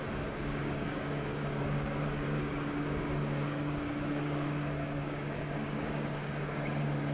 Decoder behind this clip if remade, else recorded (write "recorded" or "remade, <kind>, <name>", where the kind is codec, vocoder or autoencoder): remade, codec, DAC